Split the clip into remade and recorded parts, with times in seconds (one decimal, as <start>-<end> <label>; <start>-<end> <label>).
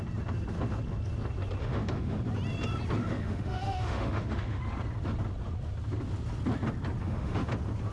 0.0-1.6 recorded; 1.6-2.2 remade; 2.2-3.0 recorded; 3.0-4.6 remade; 4.6-7.0 recorded; 7.0-7.5 remade; 7.5-7.9 recorded